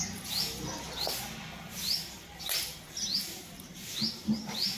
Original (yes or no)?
yes